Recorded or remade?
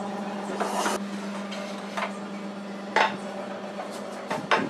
recorded